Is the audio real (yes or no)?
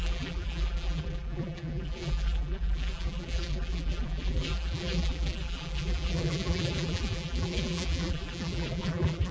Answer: no